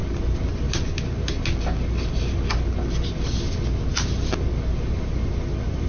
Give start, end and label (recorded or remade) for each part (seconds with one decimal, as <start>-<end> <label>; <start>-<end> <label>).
0.0-5.9 recorded